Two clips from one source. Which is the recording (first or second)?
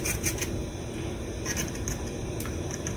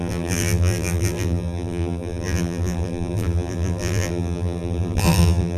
first